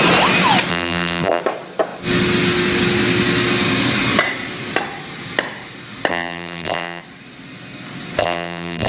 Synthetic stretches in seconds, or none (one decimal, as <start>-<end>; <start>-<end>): 0.7-1.4; 6.1-7.0; 8.2-8.9